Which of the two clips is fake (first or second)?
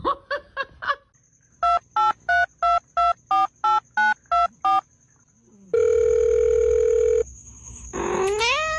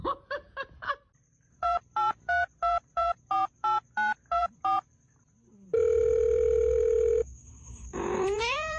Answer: second